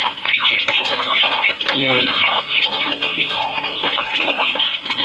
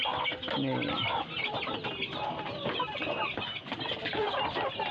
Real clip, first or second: second